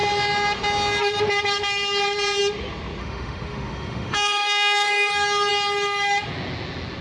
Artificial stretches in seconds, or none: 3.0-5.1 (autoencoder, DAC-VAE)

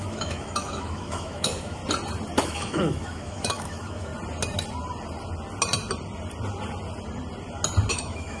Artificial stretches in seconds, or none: 0.0-1.8 (autoencoder, DAC-VAE); 2.4-4.1; 7.9-8.4

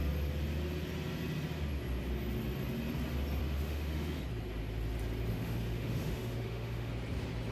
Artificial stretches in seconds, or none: 3.4-4.2 (autoencoder, DAC-VAE); 5.3-6.9

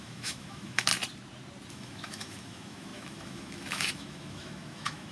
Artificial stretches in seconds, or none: 0.0-0.9 (autoencoder, DAC-VAE); 1.7-5.1

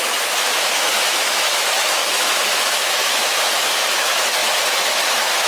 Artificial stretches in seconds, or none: 0.0-5.5 (autoencoder, DAC-VAE)

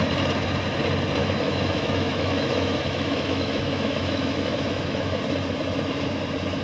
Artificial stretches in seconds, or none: 1.2-5.2 (autoencoder, DAC-VAE)

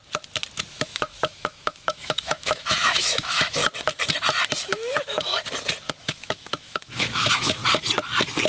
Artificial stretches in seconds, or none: 0.7-3.6 (autoencoder, DAC-VAE); 4.6-5.3; 6.0-7.6

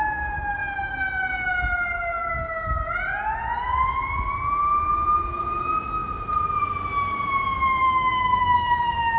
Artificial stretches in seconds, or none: 7.8-9.2 (autoencoder, DAC-VAE)